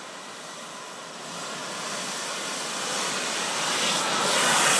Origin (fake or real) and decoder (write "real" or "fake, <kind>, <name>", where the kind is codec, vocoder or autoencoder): real